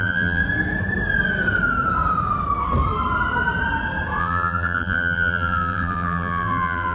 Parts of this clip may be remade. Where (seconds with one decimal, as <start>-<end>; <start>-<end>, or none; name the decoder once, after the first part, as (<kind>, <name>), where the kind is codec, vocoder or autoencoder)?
0.0-0.4 (vocoder, BigVGAN v2); 4.2-6.9